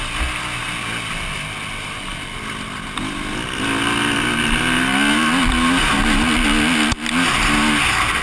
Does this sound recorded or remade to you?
recorded